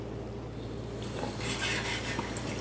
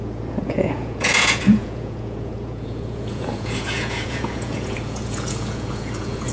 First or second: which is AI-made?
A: second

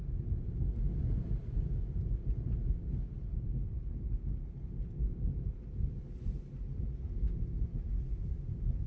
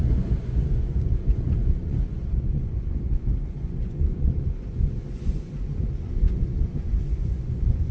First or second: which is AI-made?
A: second